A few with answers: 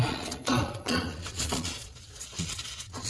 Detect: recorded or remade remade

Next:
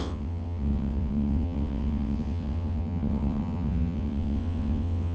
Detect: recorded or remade remade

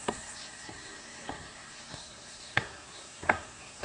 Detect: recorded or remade remade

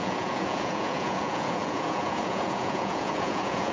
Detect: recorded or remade remade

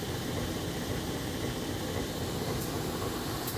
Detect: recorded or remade recorded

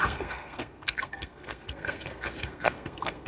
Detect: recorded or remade remade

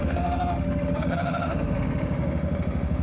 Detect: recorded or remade remade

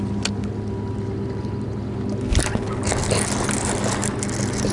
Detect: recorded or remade recorded